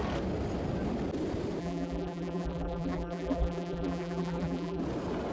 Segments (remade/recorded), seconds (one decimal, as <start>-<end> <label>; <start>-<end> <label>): 0.0-1.6 recorded; 1.6-4.8 remade; 4.8-5.3 recorded